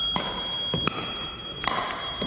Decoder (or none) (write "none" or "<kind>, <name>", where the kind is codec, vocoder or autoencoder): none